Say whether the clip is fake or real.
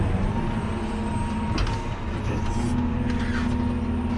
real